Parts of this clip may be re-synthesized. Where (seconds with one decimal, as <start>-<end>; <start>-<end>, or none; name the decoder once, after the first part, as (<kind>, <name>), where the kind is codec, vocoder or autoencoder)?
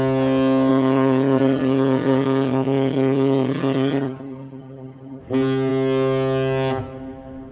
0.7-5.2 (vocoder, HiFi-GAN)